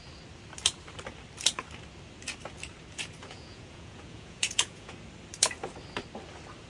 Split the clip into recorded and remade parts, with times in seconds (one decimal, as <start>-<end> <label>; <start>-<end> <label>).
0.0-3.2 recorded; 3.2-4.9 remade; 4.9-6.7 recorded